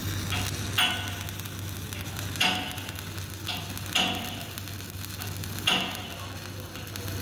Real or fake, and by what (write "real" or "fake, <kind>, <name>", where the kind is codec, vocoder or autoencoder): real